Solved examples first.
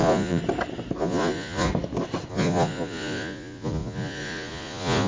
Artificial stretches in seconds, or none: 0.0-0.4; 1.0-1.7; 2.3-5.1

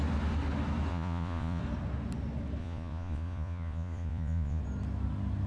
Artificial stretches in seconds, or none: 0.9-1.6; 2.6-4.6

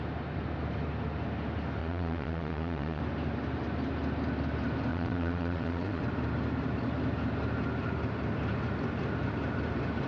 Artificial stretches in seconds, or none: 1.8-3.0; 4.9-6.0

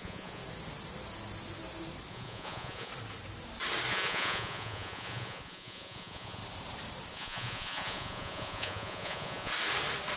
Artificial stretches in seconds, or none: 0.0-0.4; 2.1-2.9; 3.9-6.4; 7.1-9.5